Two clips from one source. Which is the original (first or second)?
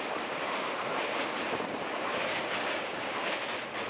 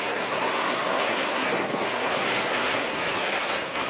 first